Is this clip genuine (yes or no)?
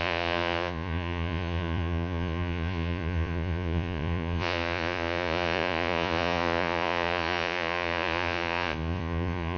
no